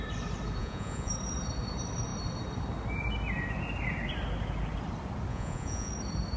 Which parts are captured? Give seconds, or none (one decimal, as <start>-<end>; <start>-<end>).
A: 0.0-0.6; 1.1-5.3; 5.9-6.4